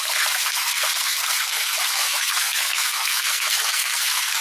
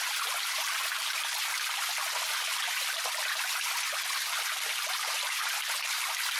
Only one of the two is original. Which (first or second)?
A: second